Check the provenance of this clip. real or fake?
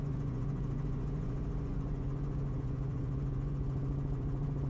fake